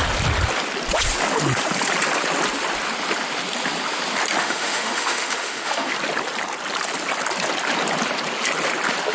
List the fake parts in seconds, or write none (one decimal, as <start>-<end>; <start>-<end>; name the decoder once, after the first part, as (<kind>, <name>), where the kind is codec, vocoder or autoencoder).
4.4-5.9 (autoencoder, DAC-VAE)